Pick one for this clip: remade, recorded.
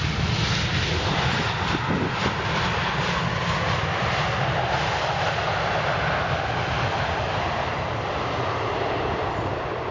recorded